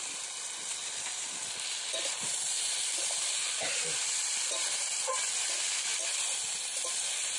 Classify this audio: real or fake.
fake